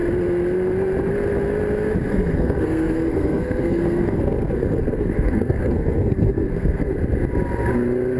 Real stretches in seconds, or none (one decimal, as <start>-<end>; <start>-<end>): 0.0-2.1; 6.9-8.2